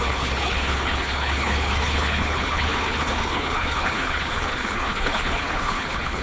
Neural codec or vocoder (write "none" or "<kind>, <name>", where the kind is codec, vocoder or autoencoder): codec, HILCodec